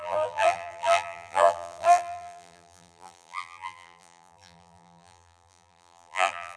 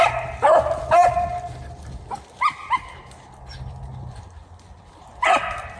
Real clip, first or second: second